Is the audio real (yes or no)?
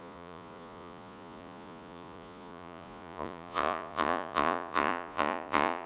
no